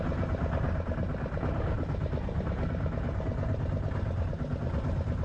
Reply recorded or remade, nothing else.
recorded